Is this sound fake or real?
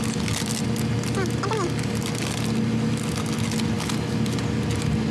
real